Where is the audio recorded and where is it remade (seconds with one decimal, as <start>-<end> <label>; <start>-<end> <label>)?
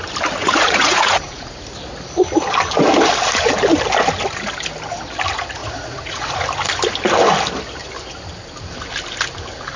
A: 0.0-0.4 recorded; 0.4-1.7 remade; 1.7-5.6 recorded; 5.6-6.3 remade; 6.3-9.8 recorded